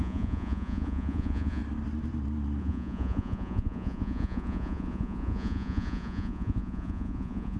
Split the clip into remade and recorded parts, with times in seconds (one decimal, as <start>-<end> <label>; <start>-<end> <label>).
0.0-1.6 remade; 1.6-2.6 recorded; 2.6-7.6 remade